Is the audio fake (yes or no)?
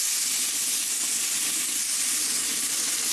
no